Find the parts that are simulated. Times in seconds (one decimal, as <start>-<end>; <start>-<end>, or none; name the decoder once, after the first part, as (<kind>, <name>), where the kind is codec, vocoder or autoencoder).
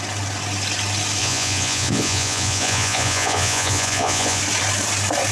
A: 1.2-4.4 (vocoder, Vocos)